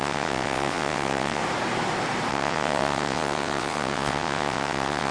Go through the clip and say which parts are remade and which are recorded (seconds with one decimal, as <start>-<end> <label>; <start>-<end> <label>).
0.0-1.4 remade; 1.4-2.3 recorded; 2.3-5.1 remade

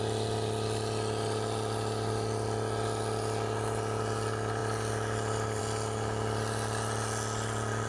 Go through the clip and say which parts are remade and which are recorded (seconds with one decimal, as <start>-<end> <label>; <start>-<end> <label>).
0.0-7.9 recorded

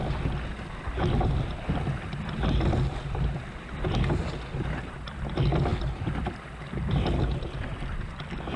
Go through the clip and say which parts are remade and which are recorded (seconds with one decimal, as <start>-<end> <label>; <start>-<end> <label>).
0.0-5.7 recorded; 5.7-6.9 remade; 6.9-8.6 recorded

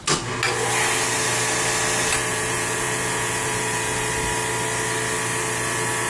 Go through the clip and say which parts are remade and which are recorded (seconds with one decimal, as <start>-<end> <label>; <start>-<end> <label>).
0.0-2.3 recorded; 2.3-4.1 remade; 4.1-6.1 recorded

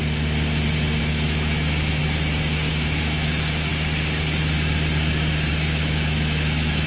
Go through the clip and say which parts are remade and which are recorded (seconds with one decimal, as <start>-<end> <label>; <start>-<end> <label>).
0.0-1.0 recorded; 1.0-2.0 remade; 2.0-2.7 recorded; 2.7-3.7 remade; 3.7-5.5 recorded; 5.5-6.9 remade

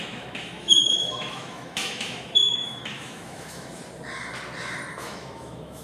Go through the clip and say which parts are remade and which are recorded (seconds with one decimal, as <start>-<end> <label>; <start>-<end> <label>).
0.0-3.8 remade; 3.8-4.9 recorded; 4.9-5.8 remade

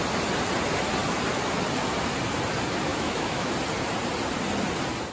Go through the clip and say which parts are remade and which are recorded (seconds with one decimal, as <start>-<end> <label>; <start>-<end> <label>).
0.0-2.9 recorded; 2.9-3.5 remade; 3.5-5.1 recorded

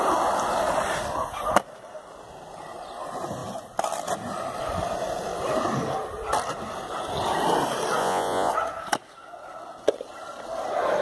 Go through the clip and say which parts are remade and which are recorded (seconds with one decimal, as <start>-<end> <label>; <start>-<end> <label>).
0.0-8.0 recorded; 8.0-8.5 remade; 8.5-11.0 recorded